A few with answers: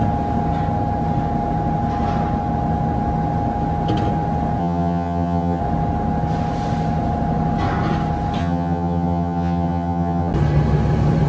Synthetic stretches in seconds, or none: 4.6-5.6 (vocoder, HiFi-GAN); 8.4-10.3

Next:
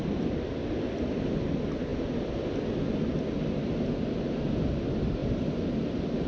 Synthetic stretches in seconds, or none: none

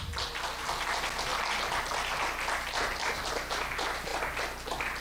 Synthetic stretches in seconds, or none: none